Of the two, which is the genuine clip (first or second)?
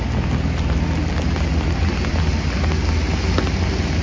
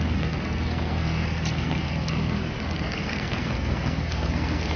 first